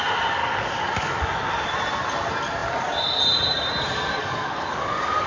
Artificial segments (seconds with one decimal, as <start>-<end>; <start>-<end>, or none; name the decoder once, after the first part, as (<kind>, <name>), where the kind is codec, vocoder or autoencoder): 0.4-1.7 (codec, DAC); 4.2-5.3